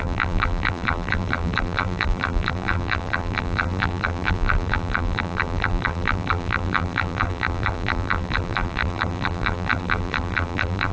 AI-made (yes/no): yes